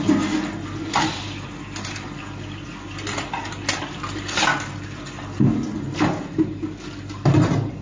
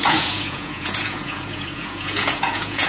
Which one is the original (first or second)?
first